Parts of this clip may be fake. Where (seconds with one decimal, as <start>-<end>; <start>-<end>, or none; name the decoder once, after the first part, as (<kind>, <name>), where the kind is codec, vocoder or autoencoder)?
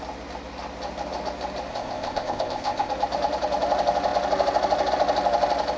1.7-2.9 (codec, ZipCodec)